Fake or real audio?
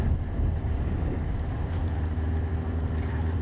fake